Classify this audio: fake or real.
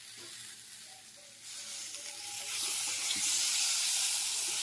real